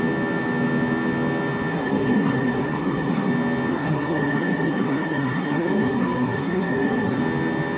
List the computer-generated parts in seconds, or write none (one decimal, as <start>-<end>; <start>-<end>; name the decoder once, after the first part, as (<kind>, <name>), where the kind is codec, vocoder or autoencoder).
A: 1.7-3.3 (codec, SNAC); 3.7-7.2